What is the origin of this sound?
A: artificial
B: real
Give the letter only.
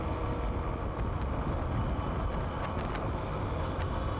B